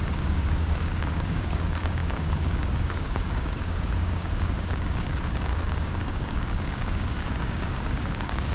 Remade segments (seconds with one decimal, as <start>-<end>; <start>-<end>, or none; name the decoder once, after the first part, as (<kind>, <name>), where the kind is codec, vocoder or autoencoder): 0.0-8.5 (codec, DAC)